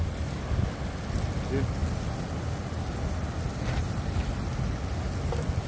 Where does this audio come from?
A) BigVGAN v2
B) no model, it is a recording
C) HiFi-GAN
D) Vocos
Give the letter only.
B